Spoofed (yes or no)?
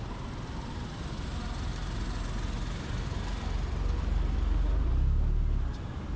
no